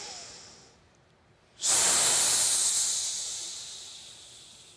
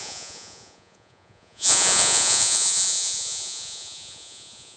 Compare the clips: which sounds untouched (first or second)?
first